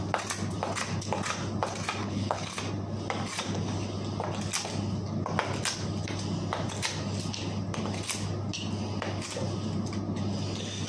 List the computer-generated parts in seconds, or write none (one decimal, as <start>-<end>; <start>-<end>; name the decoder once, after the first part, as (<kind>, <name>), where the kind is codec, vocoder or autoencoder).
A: 2.0-2.6 (codec, HILCodec)